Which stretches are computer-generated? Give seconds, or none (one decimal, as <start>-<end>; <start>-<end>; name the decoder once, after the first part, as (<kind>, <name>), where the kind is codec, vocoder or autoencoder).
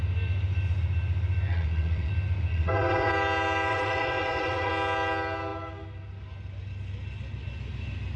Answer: 1.5-2.1 (vocoder, WaveNeXt); 2.5-3.1; 3.7-4.7